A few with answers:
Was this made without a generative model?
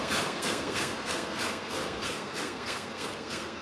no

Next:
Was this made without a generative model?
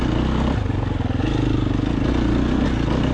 yes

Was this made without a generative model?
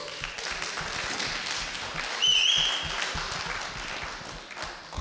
yes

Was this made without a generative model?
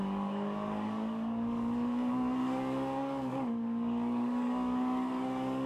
no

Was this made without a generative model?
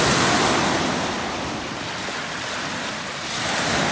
yes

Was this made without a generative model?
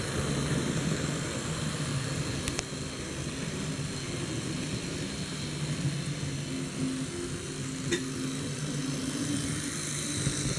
yes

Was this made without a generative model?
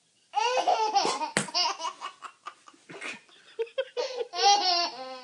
yes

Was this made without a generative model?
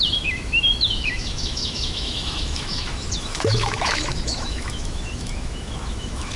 no